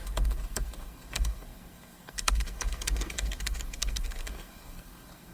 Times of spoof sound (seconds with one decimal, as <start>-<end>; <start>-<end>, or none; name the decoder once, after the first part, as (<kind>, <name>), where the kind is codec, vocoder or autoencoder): 0.0-5.3 (codec, SNAC)